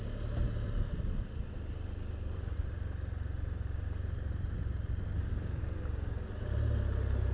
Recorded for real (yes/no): yes